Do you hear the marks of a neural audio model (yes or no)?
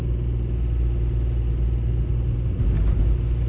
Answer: no